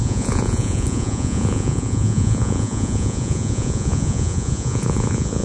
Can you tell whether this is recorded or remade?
remade